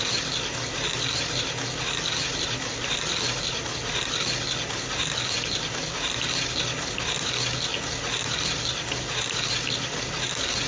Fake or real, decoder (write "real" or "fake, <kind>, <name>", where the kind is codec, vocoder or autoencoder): real